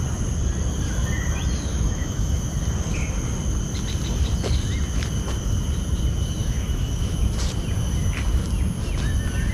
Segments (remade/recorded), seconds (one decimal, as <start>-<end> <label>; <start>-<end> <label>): 0.0-1.7 recorded; 1.7-2.4 remade; 2.4-6.4 recorded; 6.4-7.3 remade; 7.3-9.5 recorded